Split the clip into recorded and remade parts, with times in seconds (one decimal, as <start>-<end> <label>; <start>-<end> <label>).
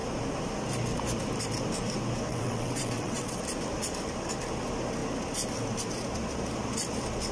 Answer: 0.0-2.3 recorded; 2.3-3.4 remade; 3.4-7.3 recorded